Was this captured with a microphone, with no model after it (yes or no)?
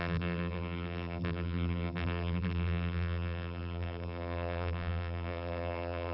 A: no